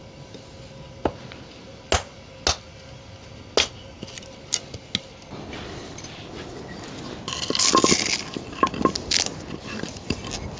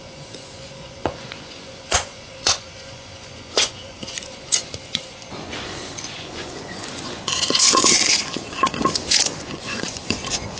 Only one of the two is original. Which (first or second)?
first